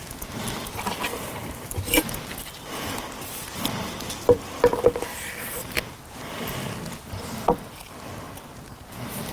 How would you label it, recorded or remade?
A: recorded